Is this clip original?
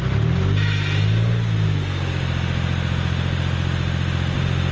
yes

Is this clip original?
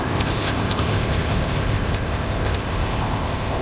no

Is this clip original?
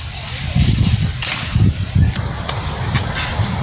no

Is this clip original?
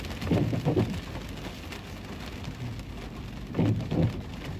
yes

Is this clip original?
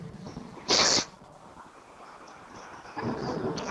yes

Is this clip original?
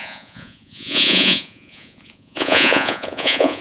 no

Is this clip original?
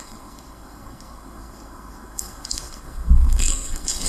no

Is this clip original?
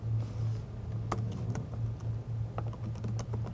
yes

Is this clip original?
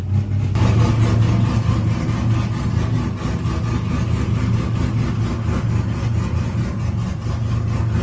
yes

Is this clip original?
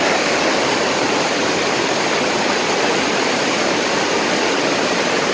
no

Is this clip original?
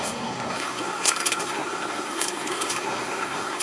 no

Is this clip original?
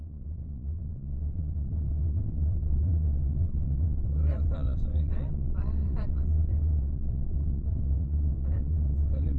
no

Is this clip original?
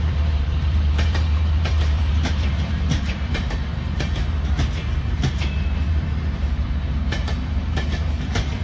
no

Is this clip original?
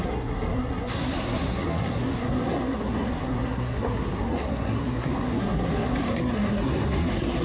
no